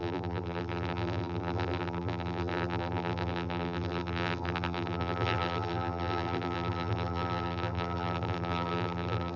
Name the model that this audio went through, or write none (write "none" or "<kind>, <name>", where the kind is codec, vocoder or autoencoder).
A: vocoder, BigVGAN v2